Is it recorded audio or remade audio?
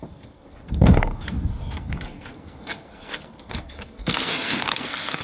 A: remade